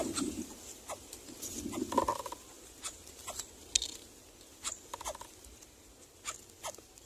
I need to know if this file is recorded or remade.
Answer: recorded